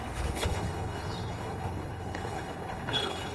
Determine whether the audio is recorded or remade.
remade